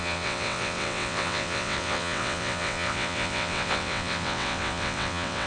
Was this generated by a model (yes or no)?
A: yes